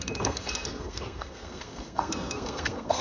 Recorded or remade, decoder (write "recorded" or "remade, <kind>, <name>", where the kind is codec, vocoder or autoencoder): remade, codec, SNAC